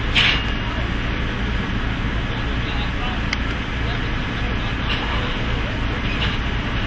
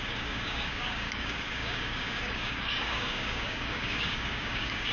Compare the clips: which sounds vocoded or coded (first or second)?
second